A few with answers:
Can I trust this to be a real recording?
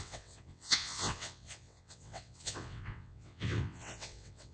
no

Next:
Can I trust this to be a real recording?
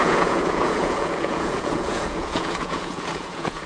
no